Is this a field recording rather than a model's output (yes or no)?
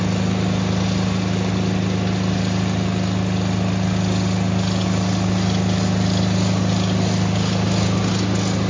yes